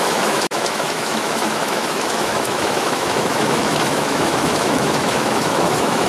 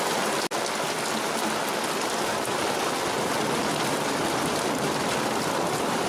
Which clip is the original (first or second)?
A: second